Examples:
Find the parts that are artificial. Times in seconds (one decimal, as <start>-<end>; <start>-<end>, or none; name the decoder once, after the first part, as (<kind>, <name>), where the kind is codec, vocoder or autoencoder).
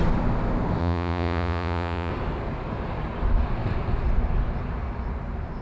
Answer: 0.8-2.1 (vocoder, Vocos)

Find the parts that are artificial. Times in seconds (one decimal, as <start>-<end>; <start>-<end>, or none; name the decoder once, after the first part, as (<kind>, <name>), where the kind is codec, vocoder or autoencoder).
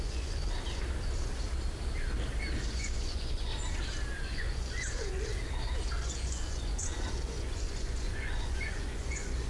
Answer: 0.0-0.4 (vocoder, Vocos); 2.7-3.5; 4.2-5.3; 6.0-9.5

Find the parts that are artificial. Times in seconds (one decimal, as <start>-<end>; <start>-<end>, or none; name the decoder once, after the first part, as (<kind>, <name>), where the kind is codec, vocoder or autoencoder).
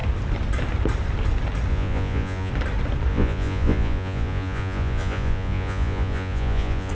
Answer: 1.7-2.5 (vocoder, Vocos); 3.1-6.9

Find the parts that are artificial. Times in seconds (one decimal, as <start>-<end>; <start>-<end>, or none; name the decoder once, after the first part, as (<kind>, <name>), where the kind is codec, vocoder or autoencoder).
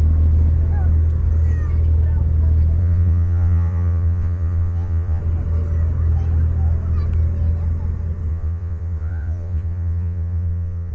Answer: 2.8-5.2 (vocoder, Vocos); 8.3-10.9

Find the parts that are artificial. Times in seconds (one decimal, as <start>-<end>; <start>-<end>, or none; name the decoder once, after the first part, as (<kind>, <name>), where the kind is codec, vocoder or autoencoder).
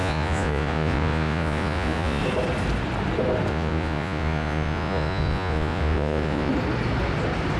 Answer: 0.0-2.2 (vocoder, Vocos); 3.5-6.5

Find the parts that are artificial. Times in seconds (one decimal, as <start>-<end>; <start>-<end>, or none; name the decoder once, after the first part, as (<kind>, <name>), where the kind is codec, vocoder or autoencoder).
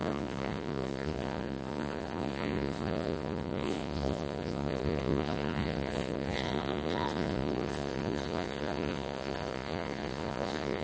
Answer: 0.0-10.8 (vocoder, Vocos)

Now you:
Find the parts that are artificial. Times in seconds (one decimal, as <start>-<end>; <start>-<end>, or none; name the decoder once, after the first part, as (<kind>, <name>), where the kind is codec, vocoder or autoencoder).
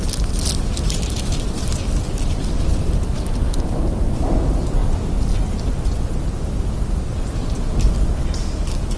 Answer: none